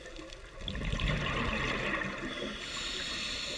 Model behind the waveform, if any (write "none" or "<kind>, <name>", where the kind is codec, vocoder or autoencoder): none